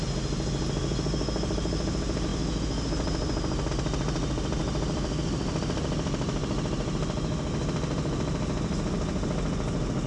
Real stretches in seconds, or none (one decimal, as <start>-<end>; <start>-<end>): 0.0-10.1